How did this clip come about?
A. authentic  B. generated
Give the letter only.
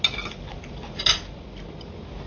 A